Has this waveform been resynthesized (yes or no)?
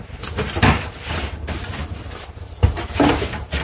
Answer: no